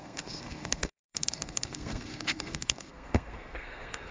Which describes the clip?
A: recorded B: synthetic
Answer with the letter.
B